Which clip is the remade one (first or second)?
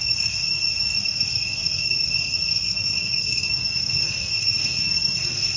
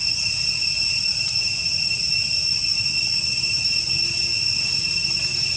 first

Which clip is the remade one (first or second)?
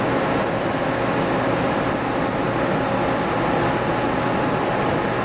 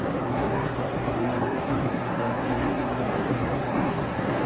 second